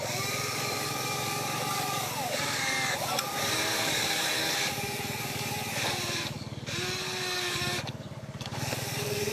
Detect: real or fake fake